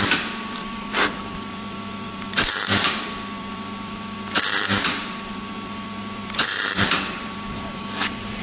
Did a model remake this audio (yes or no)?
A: yes